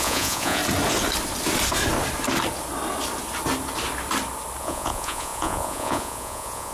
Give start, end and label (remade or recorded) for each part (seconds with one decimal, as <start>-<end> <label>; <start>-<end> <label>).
0.0-0.6 remade; 0.6-4.6 recorded; 4.6-6.7 remade